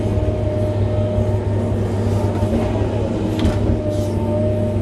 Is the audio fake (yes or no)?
no